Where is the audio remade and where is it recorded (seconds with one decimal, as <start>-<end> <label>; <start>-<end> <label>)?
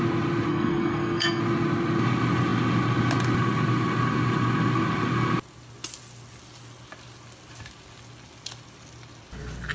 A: 0.0-0.5 recorded; 0.5-1.4 remade; 1.4-9.7 recorded